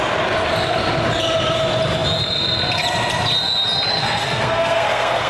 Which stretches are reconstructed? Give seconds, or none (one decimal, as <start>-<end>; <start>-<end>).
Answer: 3.9-5.3